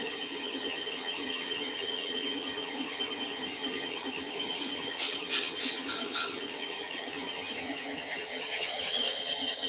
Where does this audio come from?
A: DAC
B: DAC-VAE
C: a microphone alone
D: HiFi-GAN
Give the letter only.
D